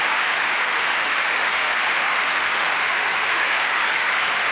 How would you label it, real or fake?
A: fake